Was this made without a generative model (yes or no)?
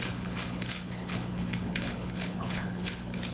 no